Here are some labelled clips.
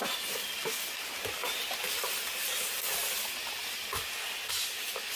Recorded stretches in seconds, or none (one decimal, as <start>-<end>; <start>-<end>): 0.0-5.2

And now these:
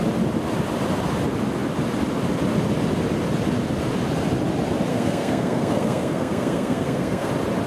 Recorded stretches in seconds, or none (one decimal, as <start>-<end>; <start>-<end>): 0.0-4.9; 7.3-7.7

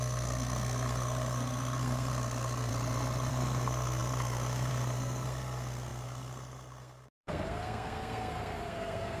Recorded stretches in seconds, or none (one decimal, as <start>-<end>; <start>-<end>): 2.7-3.3

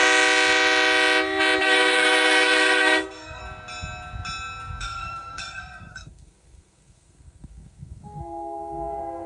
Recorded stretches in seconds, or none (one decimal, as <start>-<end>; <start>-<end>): 0.0-1.6; 3.4-4.8

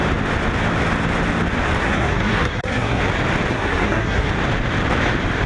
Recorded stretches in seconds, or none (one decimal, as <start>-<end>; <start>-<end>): 0.0-1.8; 3.0-3.5; 4.3-5.5